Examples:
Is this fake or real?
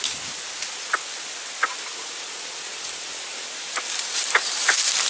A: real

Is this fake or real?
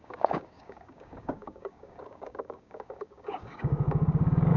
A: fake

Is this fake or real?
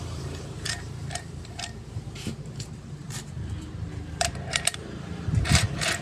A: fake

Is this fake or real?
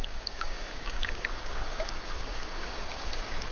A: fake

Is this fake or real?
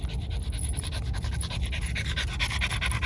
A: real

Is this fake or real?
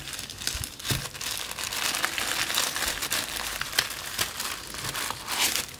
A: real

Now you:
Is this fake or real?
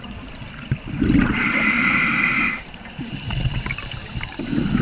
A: real